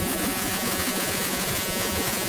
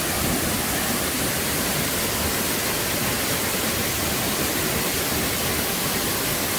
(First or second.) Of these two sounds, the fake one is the first